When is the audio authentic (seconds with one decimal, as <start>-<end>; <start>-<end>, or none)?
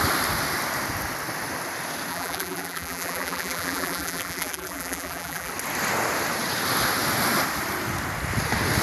0.0-2.1; 5.5-8.8